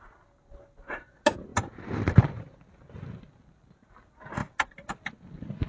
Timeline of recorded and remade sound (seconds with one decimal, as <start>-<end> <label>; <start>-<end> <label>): 0.0-5.7 recorded